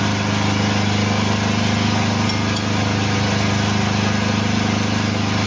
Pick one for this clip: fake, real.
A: real